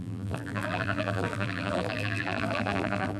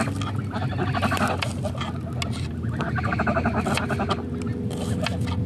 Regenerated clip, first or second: first